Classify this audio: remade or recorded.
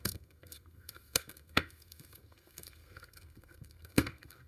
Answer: remade